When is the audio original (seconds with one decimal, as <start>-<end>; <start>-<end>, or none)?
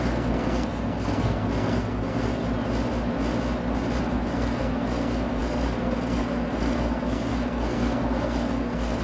2.4-4.0